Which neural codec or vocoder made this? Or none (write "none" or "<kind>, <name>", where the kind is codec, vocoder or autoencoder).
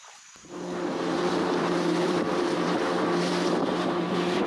vocoder, BigVGAN v2